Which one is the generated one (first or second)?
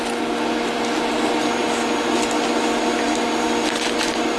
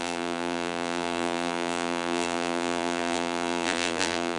second